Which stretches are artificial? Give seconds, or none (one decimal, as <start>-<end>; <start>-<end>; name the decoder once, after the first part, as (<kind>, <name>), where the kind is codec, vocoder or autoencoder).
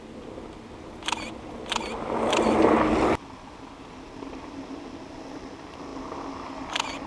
none